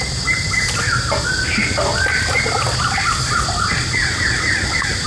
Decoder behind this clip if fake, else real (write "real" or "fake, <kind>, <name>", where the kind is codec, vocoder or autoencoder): real